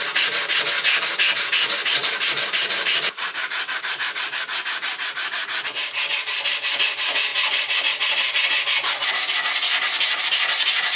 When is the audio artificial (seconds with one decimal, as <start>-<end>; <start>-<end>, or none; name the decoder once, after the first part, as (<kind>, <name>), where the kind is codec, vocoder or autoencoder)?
2.0-5.6 (vocoder, BigVGAN v2)